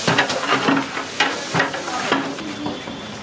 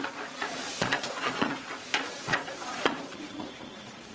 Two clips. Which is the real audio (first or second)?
first